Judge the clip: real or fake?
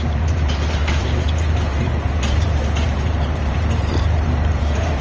fake